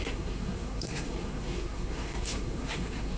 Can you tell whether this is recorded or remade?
remade